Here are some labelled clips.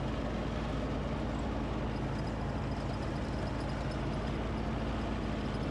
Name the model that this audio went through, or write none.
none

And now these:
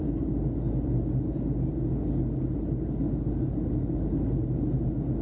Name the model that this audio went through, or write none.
none